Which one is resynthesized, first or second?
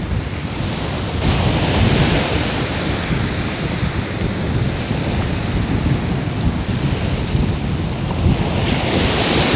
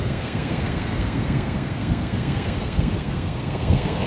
second